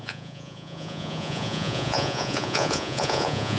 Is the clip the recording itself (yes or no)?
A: no